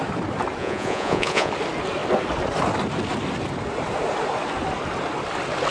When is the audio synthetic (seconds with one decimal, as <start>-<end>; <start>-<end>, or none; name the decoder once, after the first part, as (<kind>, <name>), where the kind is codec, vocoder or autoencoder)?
0.6-1.5 (vocoder, Vocos)